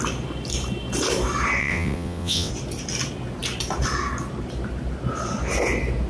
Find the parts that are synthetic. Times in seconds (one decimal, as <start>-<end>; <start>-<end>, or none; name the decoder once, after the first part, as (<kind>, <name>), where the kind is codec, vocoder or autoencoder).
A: 1.6-2.5 (vocoder, WaveNeXt)